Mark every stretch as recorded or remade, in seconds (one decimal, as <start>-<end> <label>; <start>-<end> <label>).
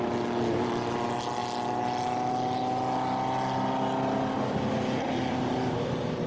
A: 0.0-6.3 recorded